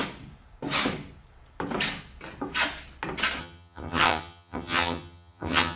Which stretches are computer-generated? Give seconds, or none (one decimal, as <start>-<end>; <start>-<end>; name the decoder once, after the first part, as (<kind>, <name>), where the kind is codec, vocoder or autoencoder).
3.4-5.8 (vocoder, HiFi-GAN)